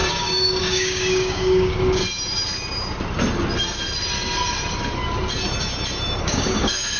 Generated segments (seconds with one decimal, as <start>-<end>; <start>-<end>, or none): 0.0-2.0; 6.2-7.0